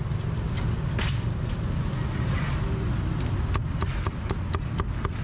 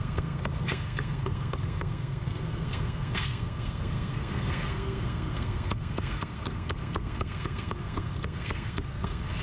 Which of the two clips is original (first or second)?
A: first